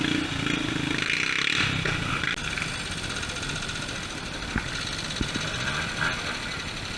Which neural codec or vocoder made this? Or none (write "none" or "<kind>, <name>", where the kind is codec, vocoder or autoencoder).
none